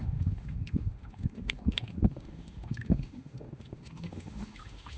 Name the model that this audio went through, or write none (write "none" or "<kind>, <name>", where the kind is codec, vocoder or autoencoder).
autoencoder, DAC-VAE